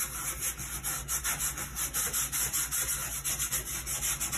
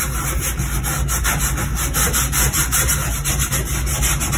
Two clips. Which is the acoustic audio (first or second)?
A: first